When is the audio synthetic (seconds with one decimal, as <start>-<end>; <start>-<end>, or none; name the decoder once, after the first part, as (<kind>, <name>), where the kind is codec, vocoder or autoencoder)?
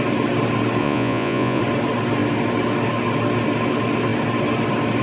0.8-1.6 (vocoder, Vocos)